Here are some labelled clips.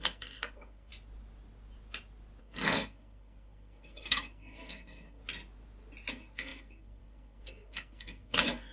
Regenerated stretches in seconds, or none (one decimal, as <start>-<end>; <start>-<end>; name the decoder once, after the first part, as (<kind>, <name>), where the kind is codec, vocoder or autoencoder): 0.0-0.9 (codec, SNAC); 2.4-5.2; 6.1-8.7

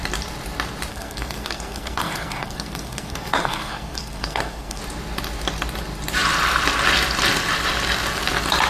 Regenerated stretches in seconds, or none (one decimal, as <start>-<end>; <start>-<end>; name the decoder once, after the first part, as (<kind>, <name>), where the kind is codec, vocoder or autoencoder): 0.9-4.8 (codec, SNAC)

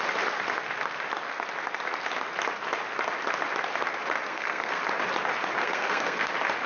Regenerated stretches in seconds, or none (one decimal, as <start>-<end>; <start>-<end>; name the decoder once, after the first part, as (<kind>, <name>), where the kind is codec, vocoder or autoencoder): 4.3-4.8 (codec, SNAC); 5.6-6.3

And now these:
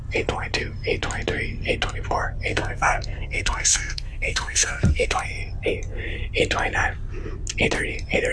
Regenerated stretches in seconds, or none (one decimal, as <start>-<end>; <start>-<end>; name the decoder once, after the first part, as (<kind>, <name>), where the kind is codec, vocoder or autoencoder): 2.5-5.2 (codec, SNAC)

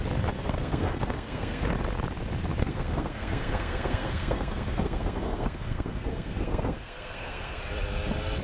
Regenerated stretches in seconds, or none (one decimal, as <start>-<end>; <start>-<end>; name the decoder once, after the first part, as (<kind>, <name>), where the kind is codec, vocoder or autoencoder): 0.4-1.6 (codec, SNAC); 2.6-7.6

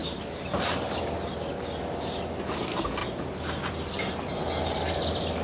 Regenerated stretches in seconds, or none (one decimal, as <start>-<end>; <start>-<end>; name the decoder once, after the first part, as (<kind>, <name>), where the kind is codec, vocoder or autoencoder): none

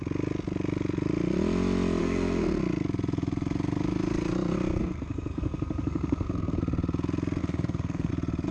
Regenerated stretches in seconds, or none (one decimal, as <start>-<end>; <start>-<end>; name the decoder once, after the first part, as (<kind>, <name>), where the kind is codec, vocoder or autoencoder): 2.0-2.6 (codec, SNAC); 4.8-6.6; 7.4-8.1

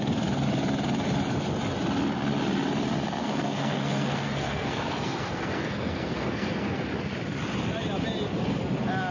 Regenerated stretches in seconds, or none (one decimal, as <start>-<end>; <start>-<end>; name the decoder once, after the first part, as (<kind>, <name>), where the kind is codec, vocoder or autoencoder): 3.2-6.9 (codec, SNAC)